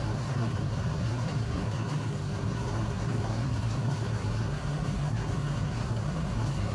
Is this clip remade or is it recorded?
remade